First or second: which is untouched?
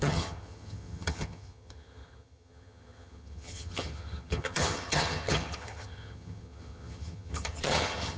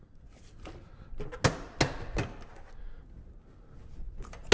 second